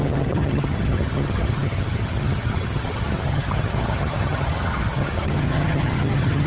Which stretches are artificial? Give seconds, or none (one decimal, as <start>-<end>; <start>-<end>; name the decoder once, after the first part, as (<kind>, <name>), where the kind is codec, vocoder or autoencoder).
0.0-6.5 (vocoder, HiFi-GAN)